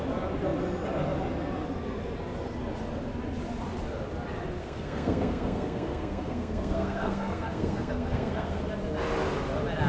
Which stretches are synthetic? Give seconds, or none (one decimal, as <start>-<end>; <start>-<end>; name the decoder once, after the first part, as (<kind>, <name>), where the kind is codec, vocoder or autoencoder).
4.6-8.6 (codec, SNAC)